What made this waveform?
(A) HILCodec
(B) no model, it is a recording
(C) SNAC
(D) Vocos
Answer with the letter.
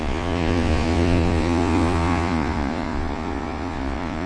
D